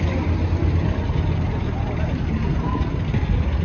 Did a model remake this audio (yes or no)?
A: no